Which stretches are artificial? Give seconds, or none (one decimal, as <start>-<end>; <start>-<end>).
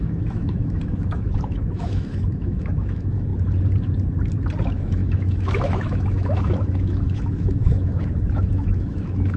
0.0-3.3; 4.6-9.4